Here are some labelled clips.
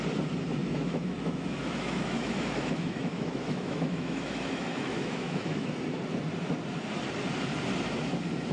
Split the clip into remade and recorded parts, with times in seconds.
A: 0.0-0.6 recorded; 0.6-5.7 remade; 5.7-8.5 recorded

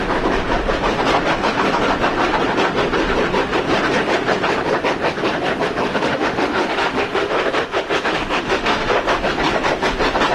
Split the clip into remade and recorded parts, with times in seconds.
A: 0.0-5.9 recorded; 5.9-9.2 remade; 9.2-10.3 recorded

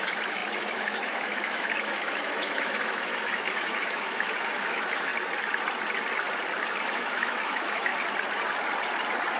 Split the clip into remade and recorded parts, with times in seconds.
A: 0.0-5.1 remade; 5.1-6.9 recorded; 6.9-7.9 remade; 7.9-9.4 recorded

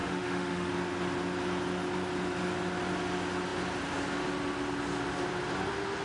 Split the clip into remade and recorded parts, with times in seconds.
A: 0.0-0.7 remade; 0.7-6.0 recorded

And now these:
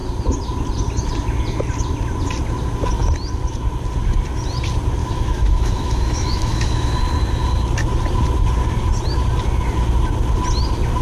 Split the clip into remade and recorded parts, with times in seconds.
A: 0.0-5.0 recorded; 5.0-7.0 remade; 7.0-11.0 recorded

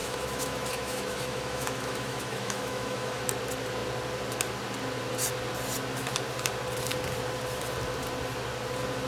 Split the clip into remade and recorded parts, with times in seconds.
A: 0.0-3.2 remade; 3.2-9.1 recorded

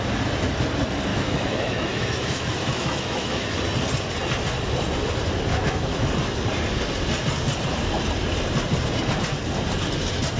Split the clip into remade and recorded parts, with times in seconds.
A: 0.0-1.1 recorded; 1.1-3.6 remade; 3.6-5.5 recorded; 5.5-6.1 remade; 6.1-10.4 recorded

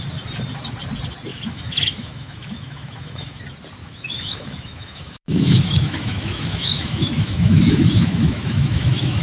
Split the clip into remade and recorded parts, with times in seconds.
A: 0.0-1.3 recorded; 1.3-3.4 remade; 3.4-3.8 recorded; 3.8-9.2 remade